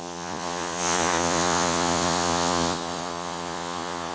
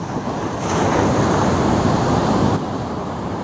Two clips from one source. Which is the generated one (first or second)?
first